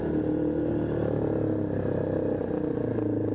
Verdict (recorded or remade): recorded